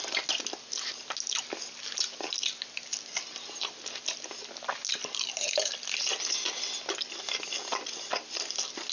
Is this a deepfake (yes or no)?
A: no